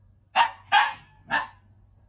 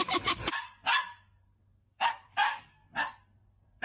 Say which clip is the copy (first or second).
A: second